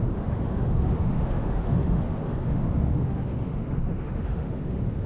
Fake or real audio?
fake